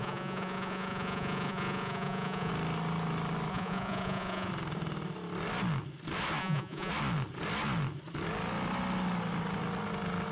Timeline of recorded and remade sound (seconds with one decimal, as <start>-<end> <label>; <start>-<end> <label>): 0.0-2.5 remade; 2.5-3.5 recorded; 3.5-4.5 remade; 4.5-6.4 recorded; 6.4-6.9 remade; 6.9-10.3 recorded